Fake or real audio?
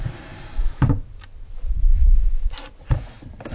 fake